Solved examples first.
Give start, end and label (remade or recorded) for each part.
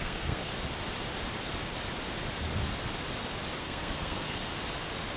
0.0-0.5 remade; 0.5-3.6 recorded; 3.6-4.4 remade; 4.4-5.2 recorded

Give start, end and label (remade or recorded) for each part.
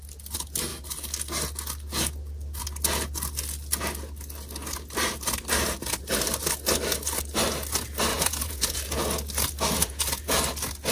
0.0-8.1 recorded; 8.1-9.0 remade; 9.0-9.8 recorded; 9.8-10.4 remade; 10.4-10.9 recorded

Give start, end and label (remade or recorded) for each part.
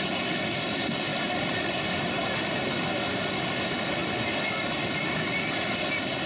0.0-1.1 recorded; 1.1-1.8 remade; 1.8-6.3 recorded